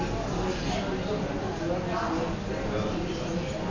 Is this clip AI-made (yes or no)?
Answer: no